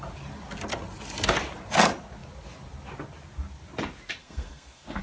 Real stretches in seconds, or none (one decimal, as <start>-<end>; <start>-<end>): 0.0-4.2